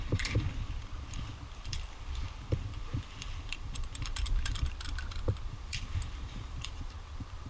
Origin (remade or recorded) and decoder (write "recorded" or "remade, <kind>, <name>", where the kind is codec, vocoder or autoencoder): remade, vocoder, BigVGAN v2